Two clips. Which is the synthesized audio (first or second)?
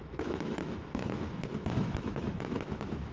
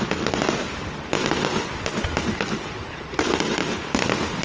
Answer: first